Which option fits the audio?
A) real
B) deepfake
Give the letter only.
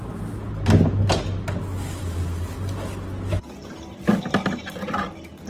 A